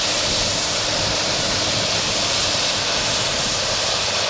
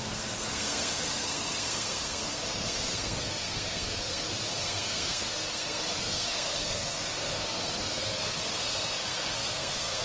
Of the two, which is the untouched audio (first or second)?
first